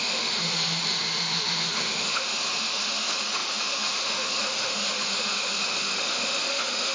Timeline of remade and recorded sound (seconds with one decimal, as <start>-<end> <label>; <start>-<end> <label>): 0.0-6.9 remade